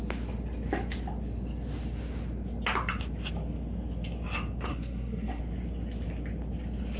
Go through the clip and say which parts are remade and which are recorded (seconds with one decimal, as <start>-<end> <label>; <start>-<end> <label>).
0.0-4.7 recorded; 4.7-5.4 remade; 5.4-7.0 recorded

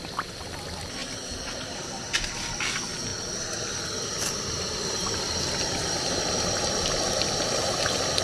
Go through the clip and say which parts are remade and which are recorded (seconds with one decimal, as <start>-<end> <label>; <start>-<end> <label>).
0.0-8.2 recorded

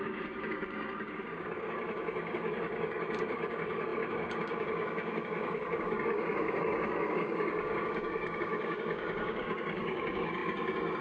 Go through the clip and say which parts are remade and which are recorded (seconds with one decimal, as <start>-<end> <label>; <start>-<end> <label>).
0.0-11.0 remade